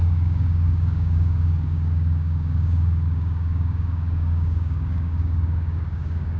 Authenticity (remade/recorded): remade